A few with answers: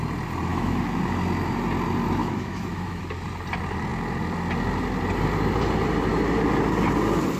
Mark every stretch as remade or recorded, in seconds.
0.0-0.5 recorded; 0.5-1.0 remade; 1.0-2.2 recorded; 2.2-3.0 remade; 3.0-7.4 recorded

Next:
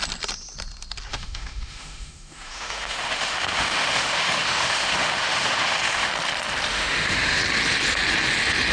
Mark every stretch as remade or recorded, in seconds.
0.0-1.1 recorded; 1.1-6.1 remade; 6.1-6.7 recorded; 6.7-7.4 remade; 7.4-8.7 recorded

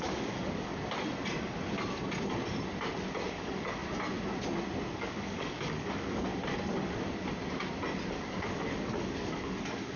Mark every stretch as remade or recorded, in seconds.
0.0-0.7 remade; 0.7-3.3 recorded; 3.3-3.8 remade; 3.8-4.9 recorded; 4.9-6.3 remade; 6.3-8.1 recorded; 8.1-10.0 remade

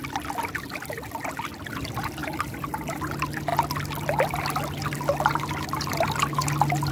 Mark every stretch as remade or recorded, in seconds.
0.0-2.2 recorded; 2.2-3.1 remade; 3.1-6.9 recorded